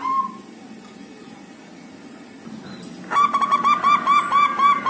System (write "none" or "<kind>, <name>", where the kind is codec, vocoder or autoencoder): none